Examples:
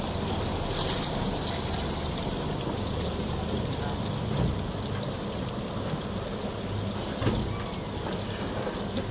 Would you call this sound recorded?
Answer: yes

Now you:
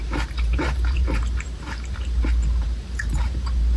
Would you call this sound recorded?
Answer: no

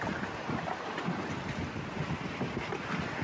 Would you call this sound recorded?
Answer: yes